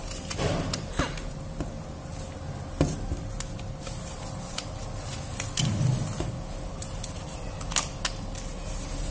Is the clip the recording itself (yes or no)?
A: yes